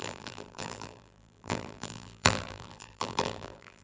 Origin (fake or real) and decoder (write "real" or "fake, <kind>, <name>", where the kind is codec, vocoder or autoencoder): fake, vocoder, BigVGAN v2